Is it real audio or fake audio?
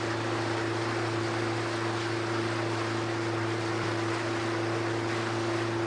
real